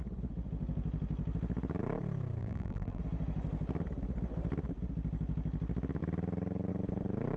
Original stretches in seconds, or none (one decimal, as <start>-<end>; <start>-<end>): 0.0-2.4; 3.0-7.4